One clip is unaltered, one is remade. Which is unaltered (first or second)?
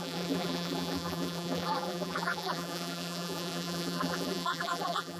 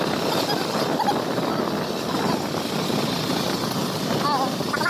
second